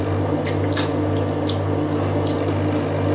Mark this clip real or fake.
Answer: real